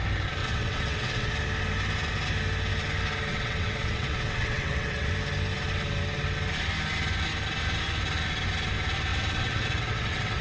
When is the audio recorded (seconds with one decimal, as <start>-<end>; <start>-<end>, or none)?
0.0-0.4; 1.3-3.3; 5.1-9.1